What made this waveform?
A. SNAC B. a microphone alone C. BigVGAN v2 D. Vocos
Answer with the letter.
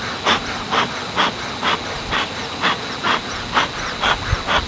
B